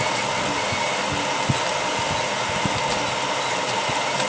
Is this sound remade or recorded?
recorded